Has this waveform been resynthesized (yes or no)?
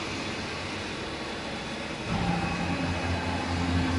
no